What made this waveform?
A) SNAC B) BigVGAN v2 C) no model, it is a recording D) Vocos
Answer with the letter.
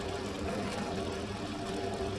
C